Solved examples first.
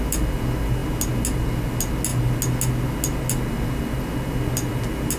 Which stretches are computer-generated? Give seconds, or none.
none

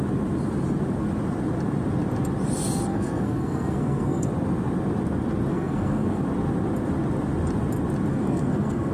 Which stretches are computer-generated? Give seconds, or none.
2.9-4.3 (codec, SNAC); 5.5-6.2; 8.1-8.9

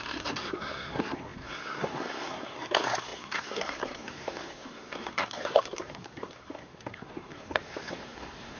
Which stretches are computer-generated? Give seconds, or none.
0.0-8.6 (codec, SNAC)

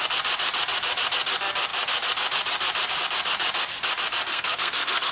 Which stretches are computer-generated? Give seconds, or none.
4.3-5.1 (codec, SNAC)

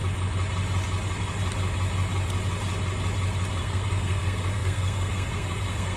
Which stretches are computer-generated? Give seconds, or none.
3.6-6.0 (codec, SNAC)

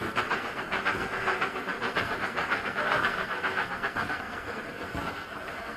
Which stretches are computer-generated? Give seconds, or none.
0.0-5.8 (codec, SNAC)

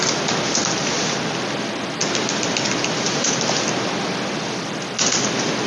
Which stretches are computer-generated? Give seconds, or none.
none

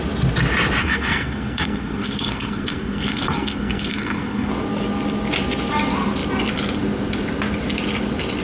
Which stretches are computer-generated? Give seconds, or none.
0.8-4.5 (codec, SNAC)